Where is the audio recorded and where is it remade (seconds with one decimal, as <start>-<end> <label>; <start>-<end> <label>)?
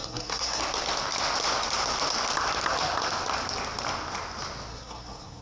0.0-0.6 remade; 0.6-4.7 recorded; 4.7-5.4 remade